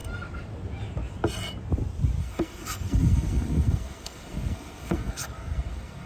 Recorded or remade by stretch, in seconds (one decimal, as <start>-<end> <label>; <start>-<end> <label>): 0.0-2.2 recorded; 2.2-6.1 remade